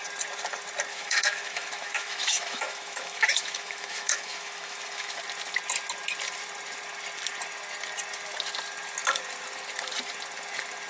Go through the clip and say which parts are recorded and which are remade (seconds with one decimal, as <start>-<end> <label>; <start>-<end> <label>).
0.0-0.9 recorded; 0.9-5.2 remade; 5.2-10.9 recorded